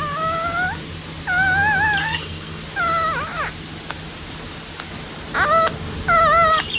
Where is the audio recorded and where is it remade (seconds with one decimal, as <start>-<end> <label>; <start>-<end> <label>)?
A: 0.0-2.0 recorded; 2.0-2.6 remade; 2.6-6.8 recorded